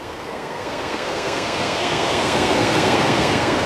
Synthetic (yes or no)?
yes